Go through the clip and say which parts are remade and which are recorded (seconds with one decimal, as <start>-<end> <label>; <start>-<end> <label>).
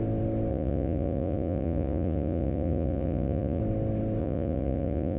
0.0-0.5 recorded; 0.5-3.6 remade; 3.6-4.2 recorded; 4.2-5.2 remade